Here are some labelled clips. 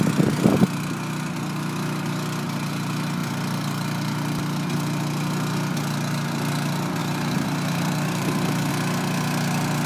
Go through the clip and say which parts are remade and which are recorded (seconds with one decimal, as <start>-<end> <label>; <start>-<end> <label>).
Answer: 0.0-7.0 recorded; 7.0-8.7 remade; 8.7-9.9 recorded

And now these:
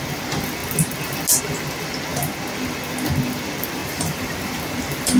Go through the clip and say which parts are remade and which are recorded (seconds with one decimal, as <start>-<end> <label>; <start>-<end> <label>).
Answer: 0.0-3.8 recorded; 3.8-5.2 remade

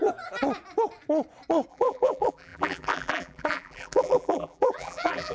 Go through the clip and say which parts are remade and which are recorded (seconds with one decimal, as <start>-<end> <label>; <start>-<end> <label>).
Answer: 0.0-1.7 recorded; 1.7-5.3 remade

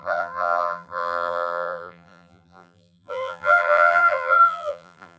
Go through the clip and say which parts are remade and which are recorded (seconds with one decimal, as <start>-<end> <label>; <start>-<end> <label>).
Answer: 0.0-5.2 remade

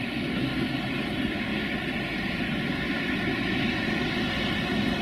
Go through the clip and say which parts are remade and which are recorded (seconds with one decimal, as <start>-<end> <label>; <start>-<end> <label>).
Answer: 0.0-5.0 recorded